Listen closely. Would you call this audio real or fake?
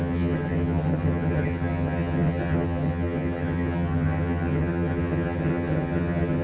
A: fake